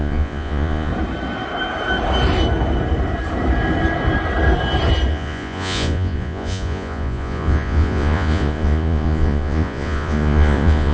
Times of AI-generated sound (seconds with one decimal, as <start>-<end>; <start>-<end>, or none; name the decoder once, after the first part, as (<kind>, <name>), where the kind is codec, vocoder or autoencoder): 0.0-0.9 (vocoder, Vocos); 5.1-10.9